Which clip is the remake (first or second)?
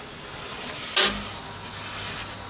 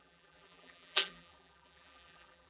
second